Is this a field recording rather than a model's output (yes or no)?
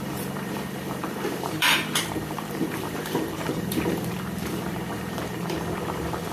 no